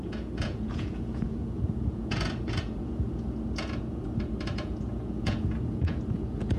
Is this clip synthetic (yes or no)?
yes